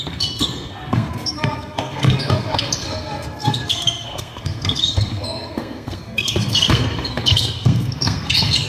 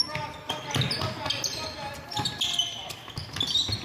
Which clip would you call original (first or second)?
second